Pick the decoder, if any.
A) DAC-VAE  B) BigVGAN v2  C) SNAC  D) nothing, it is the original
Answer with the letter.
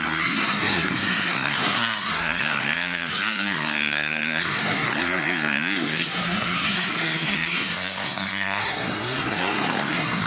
C